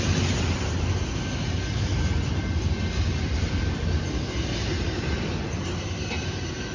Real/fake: real